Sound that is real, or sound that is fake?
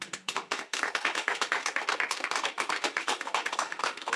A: fake